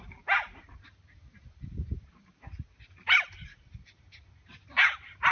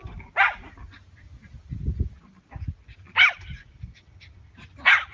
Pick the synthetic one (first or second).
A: first